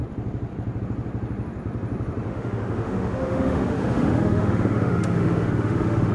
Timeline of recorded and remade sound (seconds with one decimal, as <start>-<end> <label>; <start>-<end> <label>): 0.0-2.3 recorded; 2.3-6.1 remade